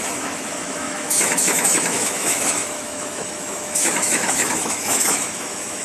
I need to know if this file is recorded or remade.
remade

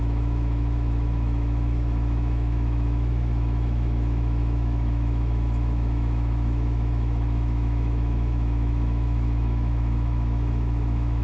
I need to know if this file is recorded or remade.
remade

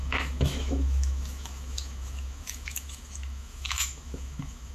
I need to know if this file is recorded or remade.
remade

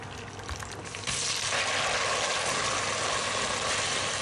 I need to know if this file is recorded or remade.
recorded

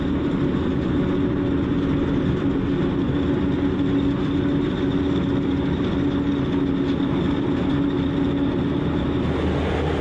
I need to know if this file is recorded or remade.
recorded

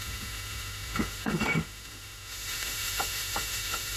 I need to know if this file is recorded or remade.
remade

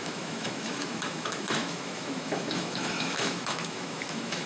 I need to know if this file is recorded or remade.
remade